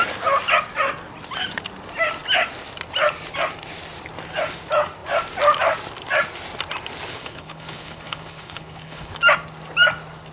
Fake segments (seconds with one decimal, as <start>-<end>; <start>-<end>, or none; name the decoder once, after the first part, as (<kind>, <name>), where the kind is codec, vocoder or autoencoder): 7.1-9.1 (codec, HILCodec)